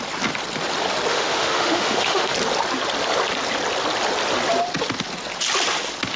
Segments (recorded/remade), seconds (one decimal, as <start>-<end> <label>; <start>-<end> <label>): 0.0-1.1 recorded; 1.1-2.3 remade; 2.3-6.2 recorded